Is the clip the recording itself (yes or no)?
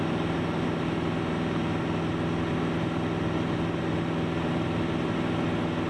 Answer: yes